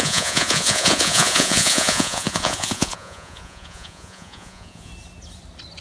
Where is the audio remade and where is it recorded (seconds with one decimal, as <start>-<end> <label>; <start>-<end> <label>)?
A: 0.0-4.9 remade; 4.9-5.8 recorded